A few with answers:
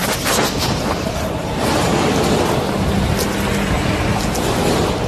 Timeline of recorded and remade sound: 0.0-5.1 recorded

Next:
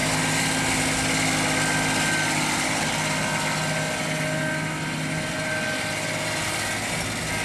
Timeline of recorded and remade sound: 0.0-7.4 recorded

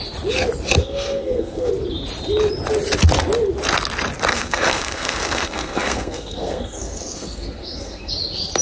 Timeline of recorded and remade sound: 0.0-0.8 recorded; 0.8-1.7 remade; 1.7-4.3 recorded; 4.3-8.1 remade; 8.1-8.6 recorded

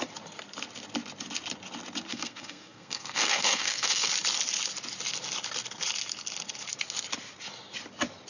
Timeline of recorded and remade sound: 0.0-2.1 recorded; 2.1-4.1 remade; 4.1-8.3 recorded